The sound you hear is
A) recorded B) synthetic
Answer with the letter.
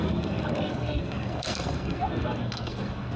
B